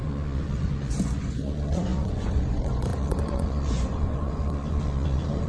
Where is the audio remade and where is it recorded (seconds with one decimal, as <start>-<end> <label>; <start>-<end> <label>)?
0.0-5.5 remade